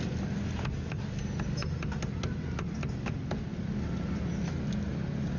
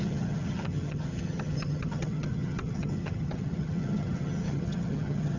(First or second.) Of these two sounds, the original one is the first